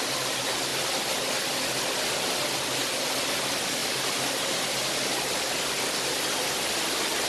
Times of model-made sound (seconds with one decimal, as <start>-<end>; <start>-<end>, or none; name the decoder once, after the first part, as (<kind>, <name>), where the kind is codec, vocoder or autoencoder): 3.8-5.5 (vocoder, BigVGAN v2)

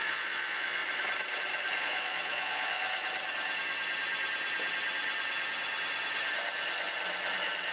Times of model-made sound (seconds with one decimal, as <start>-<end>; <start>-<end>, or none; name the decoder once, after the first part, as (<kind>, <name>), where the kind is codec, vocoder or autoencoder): 0.0-0.8 (vocoder, Vocos); 1.8-2.8

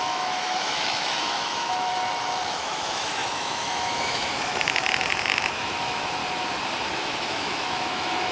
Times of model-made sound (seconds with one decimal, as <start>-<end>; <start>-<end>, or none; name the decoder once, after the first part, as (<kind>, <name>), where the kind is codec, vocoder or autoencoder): 0.0-1.9 (autoencoder, DAC-VAE); 2.5-6.2; 6.9-8.3

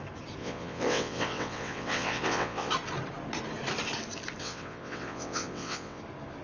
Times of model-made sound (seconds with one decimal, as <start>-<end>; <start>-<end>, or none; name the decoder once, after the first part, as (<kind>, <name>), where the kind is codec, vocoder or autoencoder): 0.4-2.7 (vocoder, WaveNeXt); 4.4-6.0

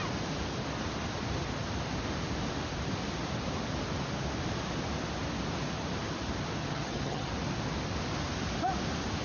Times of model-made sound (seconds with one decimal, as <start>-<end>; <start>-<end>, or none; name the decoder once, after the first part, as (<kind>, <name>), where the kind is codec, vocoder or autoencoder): 6.6-7.3 (vocoder, HiFi-GAN)

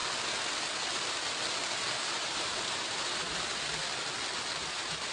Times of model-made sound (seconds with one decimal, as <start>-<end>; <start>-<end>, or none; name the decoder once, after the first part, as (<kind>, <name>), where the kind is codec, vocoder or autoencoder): 1.9-3.8 (vocoder, BigVGAN v2); 4.6-5.1

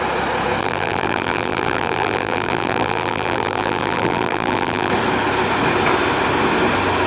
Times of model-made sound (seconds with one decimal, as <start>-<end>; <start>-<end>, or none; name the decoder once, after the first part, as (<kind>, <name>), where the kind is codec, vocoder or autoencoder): 0.6-4.9 (vocoder, BigVGAN v2)